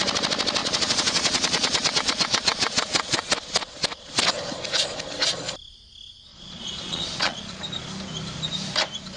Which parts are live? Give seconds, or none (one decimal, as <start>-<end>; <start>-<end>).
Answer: 0.0-0.6; 3.3-6.3; 7.6-9.2